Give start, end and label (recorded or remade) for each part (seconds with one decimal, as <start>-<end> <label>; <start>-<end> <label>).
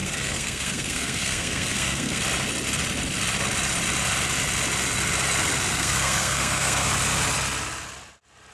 0.0-2.2 remade; 2.2-5.7 recorded; 5.7-6.9 remade; 6.9-8.5 recorded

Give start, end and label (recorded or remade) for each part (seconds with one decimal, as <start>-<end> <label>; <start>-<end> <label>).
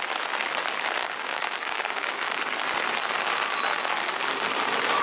0.0-1.0 recorded; 1.0-2.4 remade; 2.4-5.0 recorded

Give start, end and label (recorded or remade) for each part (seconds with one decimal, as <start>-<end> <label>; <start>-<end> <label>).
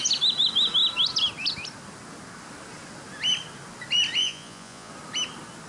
0.0-4.2 recorded; 4.2-4.9 remade; 4.9-5.7 recorded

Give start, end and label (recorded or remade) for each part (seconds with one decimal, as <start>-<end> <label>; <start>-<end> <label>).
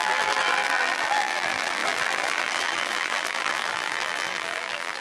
0.0-5.0 remade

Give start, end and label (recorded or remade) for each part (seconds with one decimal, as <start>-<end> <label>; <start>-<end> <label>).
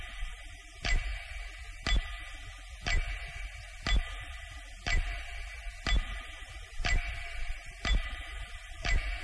0.0-1.1 remade; 1.1-6.2 recorded; 6.2-9.2 remade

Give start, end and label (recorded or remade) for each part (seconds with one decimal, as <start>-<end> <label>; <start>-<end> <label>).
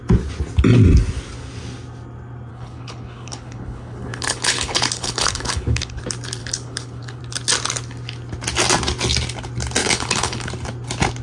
0.0-2.5 recorded; 2.5-6.0 remade; 6.0-6.4 recorded; 6.4-7.2 remade; 7.2-9.8 recorded; 9.8-10.5 remade; 10.5-11.2 recorded